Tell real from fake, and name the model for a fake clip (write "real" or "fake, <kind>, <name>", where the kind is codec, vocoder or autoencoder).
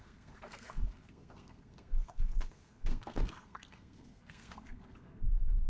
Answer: fake, codec, SNAC